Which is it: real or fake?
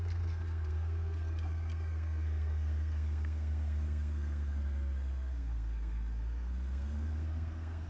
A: fake